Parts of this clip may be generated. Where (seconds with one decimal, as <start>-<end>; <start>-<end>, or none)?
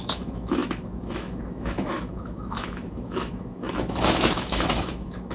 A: 0.0-5.3